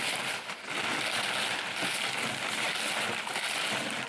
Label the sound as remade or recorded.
recorded